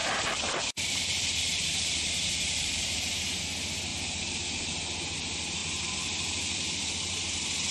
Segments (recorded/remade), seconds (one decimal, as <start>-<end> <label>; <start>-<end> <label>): 0.0-3.4 remade; 3.4-3.9 recorded; 3.9-4.7 remade; 4.7-5.6 recorded; 5.6-6.9 remade; 6.9-7.7 recorded